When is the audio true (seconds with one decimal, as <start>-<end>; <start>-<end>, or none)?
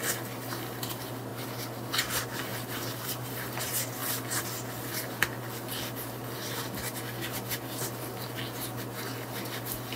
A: 0.0-2.5; 3.6-10.0